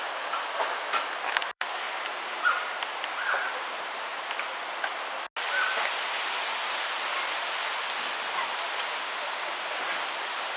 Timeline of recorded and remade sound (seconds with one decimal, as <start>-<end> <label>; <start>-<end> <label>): 0.0-1.4 recorded; 1.4-4.6 remade; 4.6-10.6 recorded